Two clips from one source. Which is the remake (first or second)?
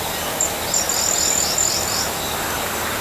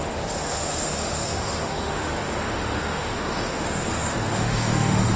second